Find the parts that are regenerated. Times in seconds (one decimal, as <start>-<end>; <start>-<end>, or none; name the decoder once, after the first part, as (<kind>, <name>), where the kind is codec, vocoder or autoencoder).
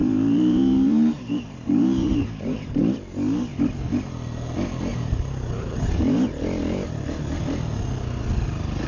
0.0-2.8 (vocoder, BigVGAN v2); 4.9-6.0